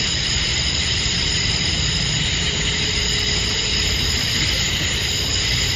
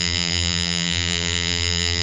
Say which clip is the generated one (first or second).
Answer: second